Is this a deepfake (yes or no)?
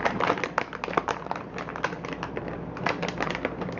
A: yes